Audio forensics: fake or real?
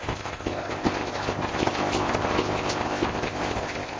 fake